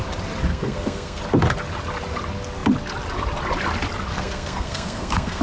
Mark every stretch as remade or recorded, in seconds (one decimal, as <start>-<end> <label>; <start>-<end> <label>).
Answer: 0.0-0.5 recorded; 0.5-1.2 remade; 1.2-4.1 recorded; 4.1-5.4 remade